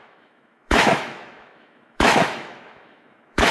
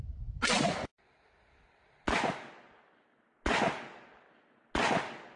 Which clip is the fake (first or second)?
first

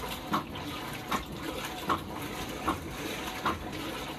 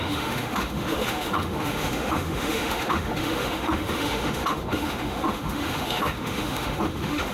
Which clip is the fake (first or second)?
second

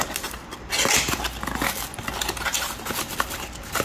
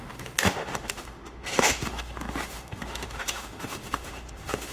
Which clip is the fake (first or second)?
second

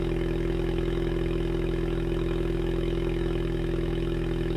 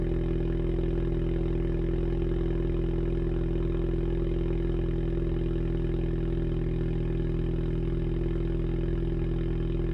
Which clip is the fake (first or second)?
first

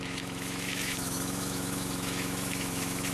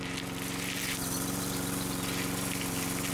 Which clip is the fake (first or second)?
first